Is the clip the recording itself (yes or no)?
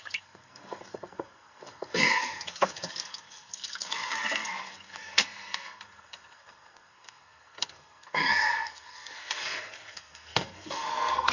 no